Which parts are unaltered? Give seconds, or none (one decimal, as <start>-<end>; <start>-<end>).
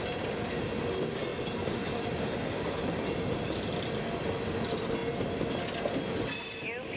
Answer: 0.0-7.0